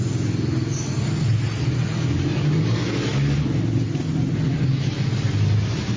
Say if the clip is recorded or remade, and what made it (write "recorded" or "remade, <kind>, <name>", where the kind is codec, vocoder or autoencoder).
recorded